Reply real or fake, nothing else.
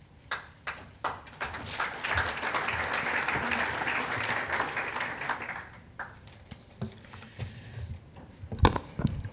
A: fake